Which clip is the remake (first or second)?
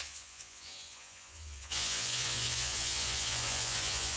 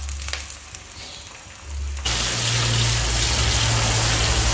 first